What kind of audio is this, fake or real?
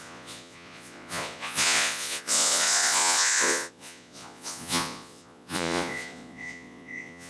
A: fake